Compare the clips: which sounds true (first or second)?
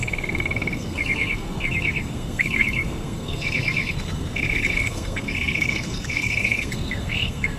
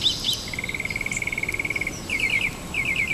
second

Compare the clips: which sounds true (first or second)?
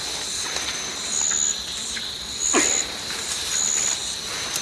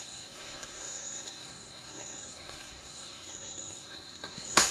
first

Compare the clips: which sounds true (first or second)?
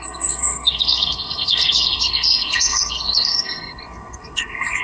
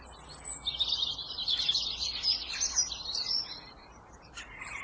second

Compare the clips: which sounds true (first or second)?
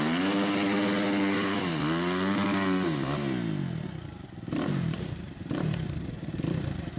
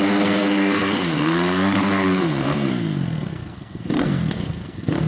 first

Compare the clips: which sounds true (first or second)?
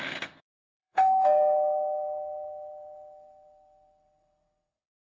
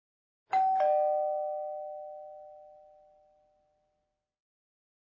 second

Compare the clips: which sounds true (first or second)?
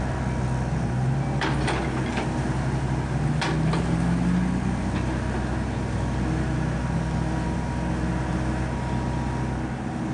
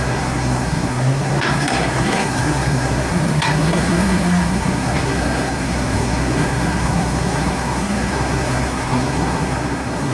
first